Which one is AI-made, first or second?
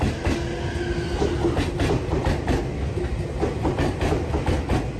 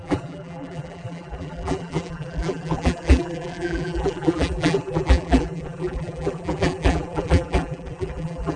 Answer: second